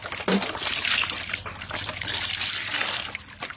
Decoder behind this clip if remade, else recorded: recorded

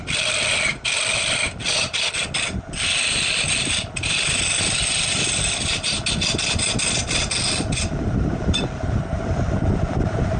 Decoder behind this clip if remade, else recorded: recorded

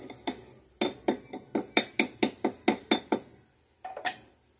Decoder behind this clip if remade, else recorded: recorded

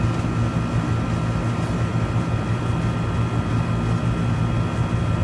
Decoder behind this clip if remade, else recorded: recorded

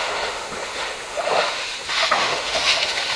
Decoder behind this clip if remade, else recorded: remade, autoencoder, DAC-VAE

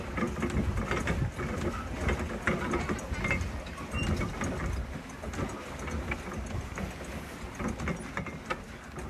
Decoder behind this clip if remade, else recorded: recorded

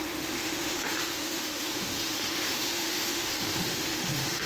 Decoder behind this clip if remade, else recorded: remade, autoencoder, DAC-VAE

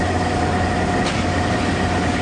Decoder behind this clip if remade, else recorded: recorded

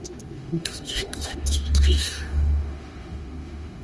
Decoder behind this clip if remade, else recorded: remade, autoencoder, DAC-VAE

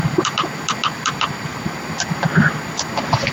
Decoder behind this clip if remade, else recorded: recorded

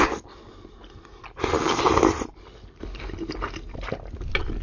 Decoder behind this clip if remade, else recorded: recorded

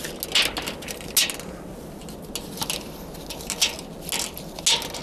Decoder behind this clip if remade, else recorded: recorded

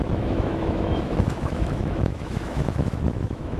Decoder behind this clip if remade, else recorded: remade, autoencoder, DAC-VAE